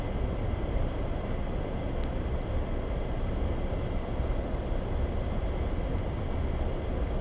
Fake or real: real